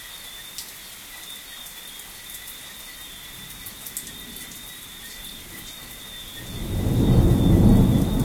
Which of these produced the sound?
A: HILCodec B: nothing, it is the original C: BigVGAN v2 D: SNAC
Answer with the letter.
B